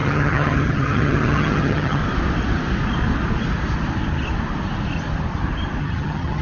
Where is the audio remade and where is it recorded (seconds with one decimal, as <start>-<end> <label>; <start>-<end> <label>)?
0.0-2.0 remade; 2.0-5.8 recorded; 5.8-6.4 remade